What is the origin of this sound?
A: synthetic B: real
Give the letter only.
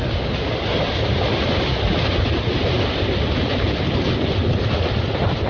B